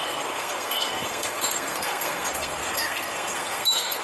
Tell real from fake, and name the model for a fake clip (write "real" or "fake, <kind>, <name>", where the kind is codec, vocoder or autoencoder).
fake, codec, SNAC